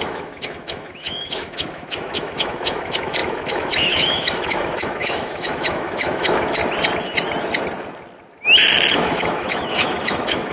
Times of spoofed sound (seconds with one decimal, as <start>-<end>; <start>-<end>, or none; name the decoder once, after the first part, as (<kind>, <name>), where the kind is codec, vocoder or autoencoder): 0.0-6.6 (autoencoder, DAC-VAE); 8.9-10.5